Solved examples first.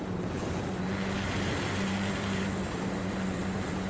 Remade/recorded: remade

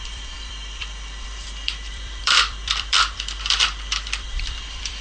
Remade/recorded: remade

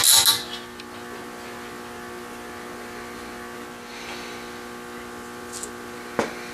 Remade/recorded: recorded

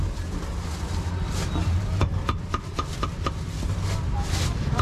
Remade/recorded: recorded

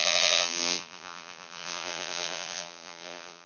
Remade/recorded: remade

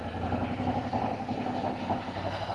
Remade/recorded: recorded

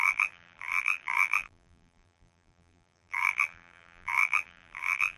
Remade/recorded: remade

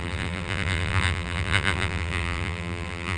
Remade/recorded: remade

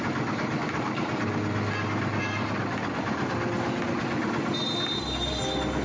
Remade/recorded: recorded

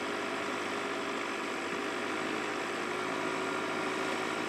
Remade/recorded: recorded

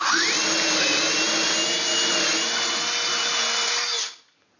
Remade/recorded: recorded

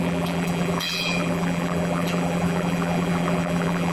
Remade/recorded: remade